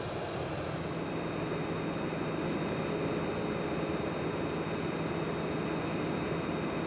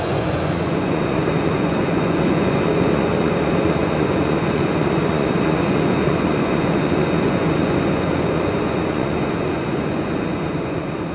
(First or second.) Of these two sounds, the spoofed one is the second